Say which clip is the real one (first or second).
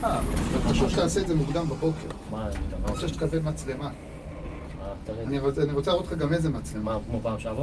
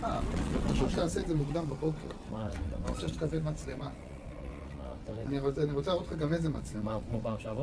first